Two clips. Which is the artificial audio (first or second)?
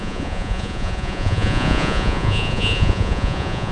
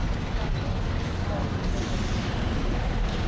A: first